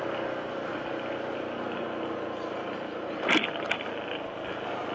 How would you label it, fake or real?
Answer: real